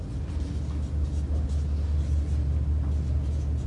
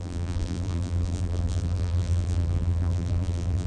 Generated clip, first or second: second